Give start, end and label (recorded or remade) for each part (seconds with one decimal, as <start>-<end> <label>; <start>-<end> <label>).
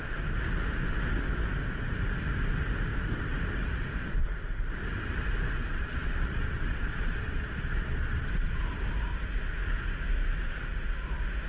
0.0-5.7 recorded; 5.7-8.6 remade; 8.6-11.5 recorded